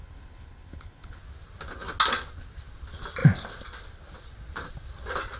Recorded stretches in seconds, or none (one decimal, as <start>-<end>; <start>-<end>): 1.2-5.4